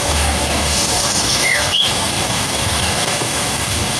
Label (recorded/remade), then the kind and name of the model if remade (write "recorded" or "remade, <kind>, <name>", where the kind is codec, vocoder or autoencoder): remade, codec, DAC